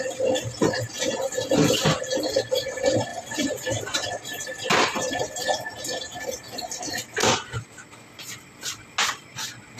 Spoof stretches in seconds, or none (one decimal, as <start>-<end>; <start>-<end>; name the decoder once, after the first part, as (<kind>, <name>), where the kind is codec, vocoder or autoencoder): none